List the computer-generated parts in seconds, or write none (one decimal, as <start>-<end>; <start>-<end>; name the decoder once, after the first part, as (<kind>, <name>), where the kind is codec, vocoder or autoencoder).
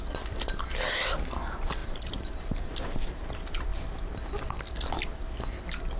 1.8-3.1 (vocoder, BigVGAN v2)